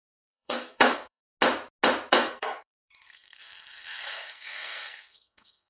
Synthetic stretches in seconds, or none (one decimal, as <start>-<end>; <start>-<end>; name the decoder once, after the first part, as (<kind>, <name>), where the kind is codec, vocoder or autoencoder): 0.0-1.2 (codec, SNAC); 2.1-5.7